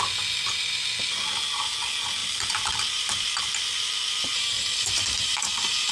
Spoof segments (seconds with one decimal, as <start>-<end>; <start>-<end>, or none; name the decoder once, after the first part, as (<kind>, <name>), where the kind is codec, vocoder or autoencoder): 2.2-5.9 (vocoder, BigVGAN v2)